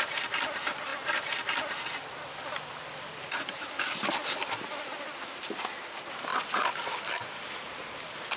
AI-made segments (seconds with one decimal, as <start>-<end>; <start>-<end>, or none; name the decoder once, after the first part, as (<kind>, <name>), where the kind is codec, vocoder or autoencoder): 6.3-7.5 (vocoder, BigVGAN v2)